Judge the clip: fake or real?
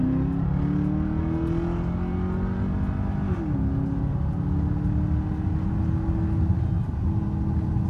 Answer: real